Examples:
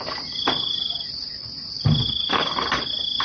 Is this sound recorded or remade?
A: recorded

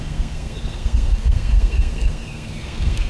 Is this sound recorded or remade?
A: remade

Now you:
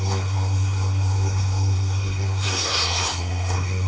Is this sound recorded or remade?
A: remade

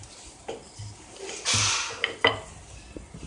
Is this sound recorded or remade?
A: recorded